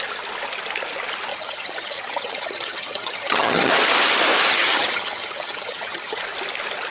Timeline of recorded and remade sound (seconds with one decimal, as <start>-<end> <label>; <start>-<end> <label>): 0.0-1.3 recorded; 1.3-3.7 remade; 3.7-4.5 recorded; 4.5-6.2 remade; 6.2-6.9 recorded